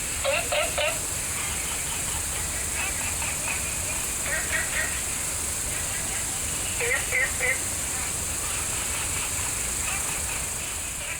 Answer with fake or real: real